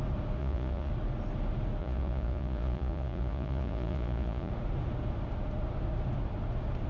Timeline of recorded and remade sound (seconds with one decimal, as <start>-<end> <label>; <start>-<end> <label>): 0.0-0.4 recorded; 0.4-0.9 remade; 0.9-1.8 recorded; 1.8-4.5 remade; 4.5-6.9 recorded